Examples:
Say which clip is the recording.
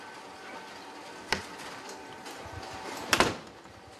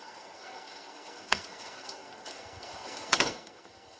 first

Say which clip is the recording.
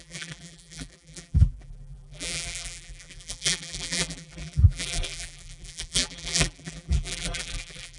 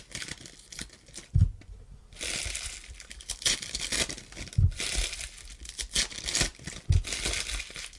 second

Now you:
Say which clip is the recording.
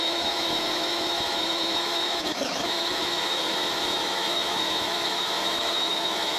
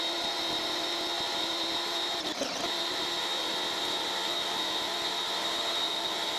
second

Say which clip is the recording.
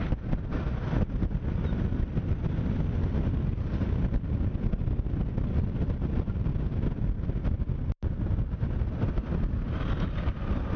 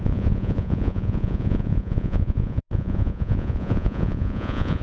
first